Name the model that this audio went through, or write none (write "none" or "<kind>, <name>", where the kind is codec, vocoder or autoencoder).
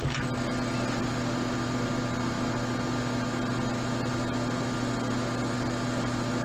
none